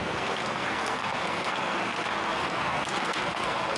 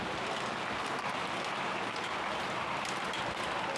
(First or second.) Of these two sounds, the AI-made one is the first